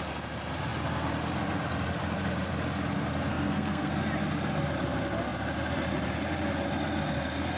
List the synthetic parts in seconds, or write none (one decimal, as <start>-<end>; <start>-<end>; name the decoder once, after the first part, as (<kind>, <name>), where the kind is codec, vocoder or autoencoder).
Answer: 3.3-3.9 (codec, SNAC)